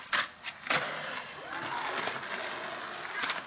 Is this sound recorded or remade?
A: recorded